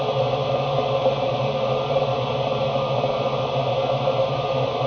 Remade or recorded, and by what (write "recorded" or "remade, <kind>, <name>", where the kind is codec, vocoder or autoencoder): recorded